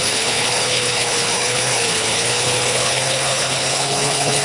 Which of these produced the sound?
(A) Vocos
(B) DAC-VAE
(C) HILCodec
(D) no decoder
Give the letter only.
C